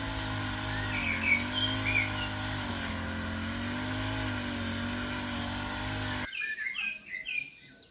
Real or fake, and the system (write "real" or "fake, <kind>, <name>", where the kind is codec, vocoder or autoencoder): real